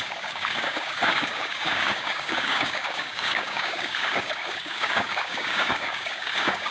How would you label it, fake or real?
fake